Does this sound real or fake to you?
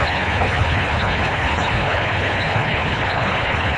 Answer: fake